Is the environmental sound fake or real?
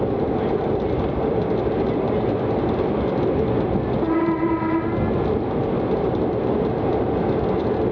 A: real